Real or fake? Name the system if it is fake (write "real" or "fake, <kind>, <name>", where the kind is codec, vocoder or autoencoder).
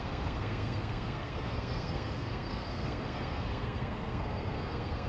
fake, codec, SNAC